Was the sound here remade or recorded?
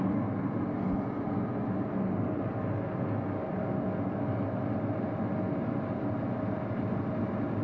recorded